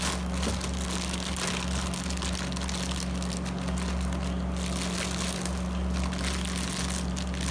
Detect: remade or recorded recorded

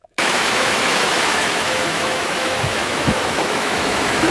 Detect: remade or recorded remade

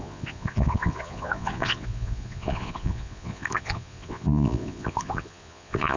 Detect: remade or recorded remade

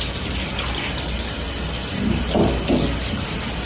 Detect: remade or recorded recorded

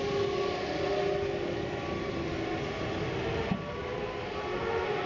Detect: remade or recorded recorded